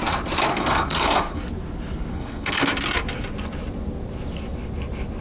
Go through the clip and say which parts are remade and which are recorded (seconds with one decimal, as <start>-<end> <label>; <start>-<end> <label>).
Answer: 0.0-0.5 recorded; 0.5-1.4 remade; 1.4-2.1 recorded; 2.1-2.7 remade; 2.7-5.2 recorded